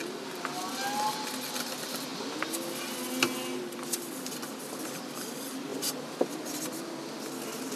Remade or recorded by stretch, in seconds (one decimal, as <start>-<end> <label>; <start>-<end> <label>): 0.0-7.8 recorded